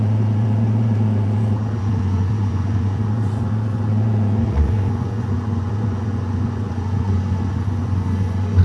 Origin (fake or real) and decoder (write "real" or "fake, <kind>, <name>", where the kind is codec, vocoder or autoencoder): fake, vocoder, Vocos